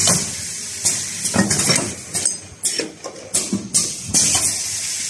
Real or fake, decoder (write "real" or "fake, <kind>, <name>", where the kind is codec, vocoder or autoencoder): real